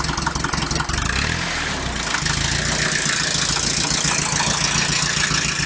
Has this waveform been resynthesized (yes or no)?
no